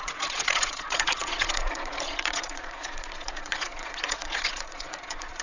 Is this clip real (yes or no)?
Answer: no